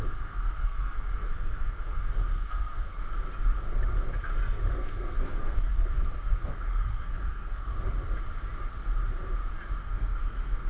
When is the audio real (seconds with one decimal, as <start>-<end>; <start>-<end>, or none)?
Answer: 3.0-4.7; 7.7-9.8